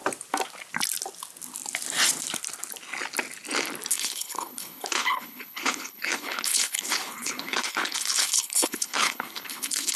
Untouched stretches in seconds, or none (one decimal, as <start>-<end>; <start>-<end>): 0.0-3.9